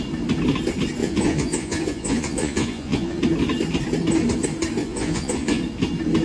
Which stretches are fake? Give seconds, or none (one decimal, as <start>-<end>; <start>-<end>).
1.0-3.2; 4.8-5.6